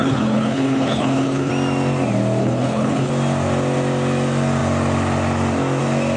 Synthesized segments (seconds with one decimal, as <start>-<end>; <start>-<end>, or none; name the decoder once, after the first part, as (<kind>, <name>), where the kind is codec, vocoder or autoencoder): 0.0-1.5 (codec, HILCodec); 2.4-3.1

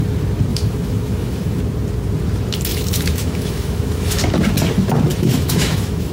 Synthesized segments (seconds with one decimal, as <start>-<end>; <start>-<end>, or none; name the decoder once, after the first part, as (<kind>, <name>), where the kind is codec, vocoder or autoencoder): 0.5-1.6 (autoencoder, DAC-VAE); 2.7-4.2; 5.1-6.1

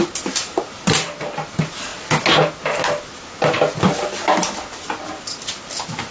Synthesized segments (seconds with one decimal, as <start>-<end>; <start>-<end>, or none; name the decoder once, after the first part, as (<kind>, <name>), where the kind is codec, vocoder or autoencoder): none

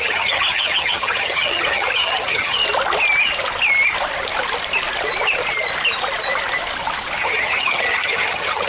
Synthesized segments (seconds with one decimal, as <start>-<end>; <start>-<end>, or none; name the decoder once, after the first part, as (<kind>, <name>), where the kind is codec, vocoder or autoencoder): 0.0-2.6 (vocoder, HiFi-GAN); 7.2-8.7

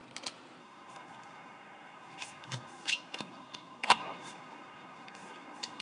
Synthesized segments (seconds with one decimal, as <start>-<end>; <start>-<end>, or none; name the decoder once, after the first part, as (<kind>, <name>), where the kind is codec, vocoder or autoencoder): 0.6-5.8 (codec, SNAC)

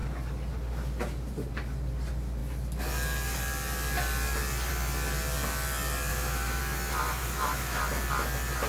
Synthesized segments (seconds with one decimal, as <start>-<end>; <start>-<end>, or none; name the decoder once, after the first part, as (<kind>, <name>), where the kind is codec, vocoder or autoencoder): 6.1-6.6 (autoencoder, DAC-VAE); 7.2-7.8